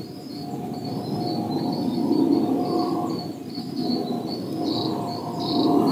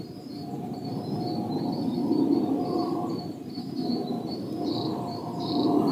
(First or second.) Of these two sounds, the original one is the first